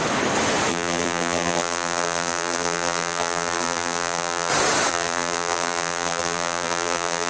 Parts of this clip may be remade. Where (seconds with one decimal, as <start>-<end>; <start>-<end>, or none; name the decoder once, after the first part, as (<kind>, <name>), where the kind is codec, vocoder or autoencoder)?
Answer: 0.7-4.5 (vocoder, BigVGAN v2); 4.9-7.3